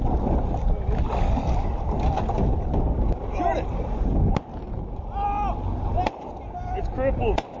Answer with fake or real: real